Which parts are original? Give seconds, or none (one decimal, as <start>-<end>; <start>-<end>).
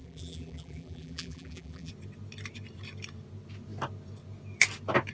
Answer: 1.9-5.1